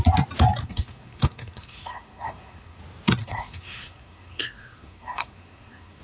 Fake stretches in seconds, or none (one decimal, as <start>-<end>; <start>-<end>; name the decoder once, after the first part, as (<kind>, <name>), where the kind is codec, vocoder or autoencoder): 0.6-2.8 (codec, SNAC); 3.2-6.0